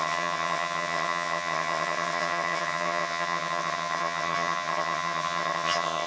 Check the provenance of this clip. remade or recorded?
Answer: remade